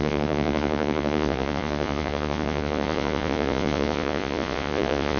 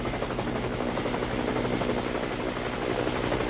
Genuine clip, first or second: second